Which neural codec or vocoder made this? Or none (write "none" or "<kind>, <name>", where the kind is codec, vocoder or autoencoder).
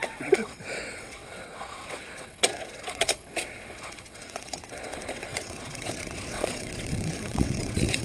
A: vocoder, WaveNeXt